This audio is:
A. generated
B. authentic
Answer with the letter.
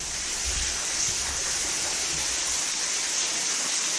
B